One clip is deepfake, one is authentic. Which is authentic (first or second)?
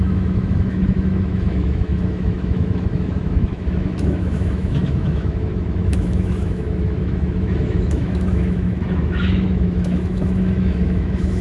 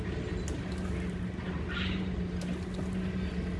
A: second